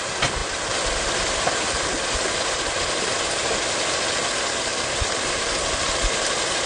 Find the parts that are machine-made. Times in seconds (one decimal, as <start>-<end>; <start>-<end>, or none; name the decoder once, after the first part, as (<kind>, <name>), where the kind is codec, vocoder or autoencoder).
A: 0.4-3.3 (vocoder, BigVGAN v2); 4.7-5.5